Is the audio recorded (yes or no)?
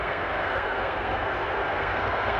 no